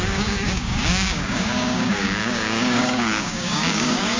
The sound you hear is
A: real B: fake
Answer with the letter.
B